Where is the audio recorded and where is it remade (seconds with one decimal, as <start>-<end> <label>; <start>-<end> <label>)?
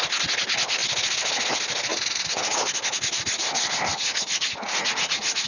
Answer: 0.0-1.9 recorded; 1.9-2.6 remade; 2.6-3.9 recorded; 3.9-5.5 remade